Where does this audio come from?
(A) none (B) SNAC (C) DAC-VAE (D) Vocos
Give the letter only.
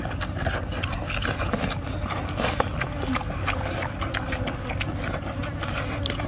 A